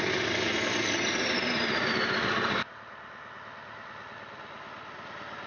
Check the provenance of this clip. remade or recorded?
recorded